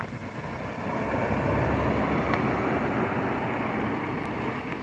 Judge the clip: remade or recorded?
recorded